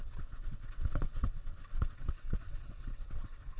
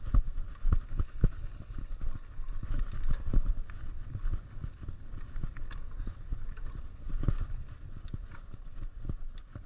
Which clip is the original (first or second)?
second